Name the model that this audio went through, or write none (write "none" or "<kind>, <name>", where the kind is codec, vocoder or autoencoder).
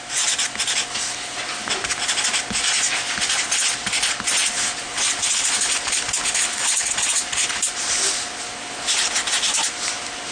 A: none